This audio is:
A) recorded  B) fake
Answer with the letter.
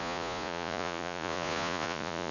B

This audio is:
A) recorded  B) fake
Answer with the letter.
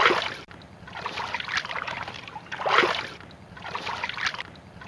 A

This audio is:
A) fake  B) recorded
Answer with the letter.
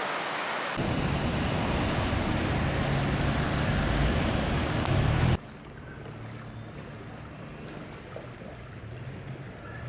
B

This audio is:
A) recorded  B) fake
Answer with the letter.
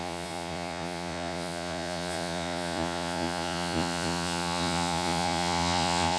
B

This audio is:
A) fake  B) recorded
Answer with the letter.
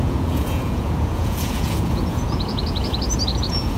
A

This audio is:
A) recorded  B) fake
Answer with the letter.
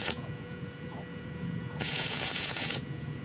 B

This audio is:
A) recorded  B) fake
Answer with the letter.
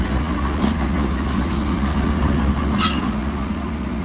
B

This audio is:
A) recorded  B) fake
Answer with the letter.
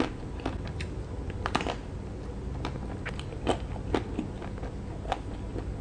A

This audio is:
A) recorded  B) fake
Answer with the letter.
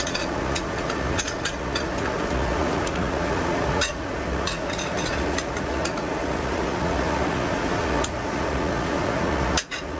B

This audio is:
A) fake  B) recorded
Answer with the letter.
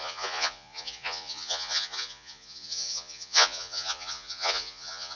A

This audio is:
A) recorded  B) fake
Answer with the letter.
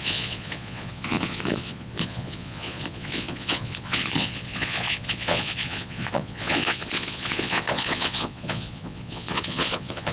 B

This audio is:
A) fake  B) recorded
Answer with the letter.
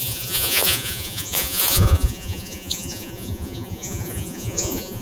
A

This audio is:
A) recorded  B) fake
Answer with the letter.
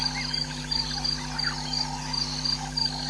A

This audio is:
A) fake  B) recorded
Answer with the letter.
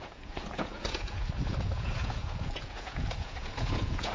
A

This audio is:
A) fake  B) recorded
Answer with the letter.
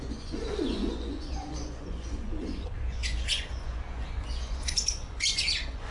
A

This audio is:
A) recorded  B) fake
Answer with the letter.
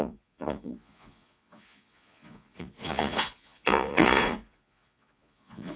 B